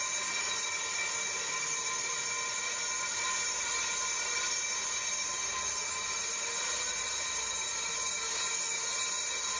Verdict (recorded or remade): recorded